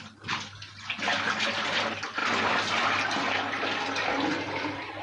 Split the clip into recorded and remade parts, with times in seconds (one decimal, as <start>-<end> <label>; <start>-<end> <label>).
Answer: 0.0-5.0 recorded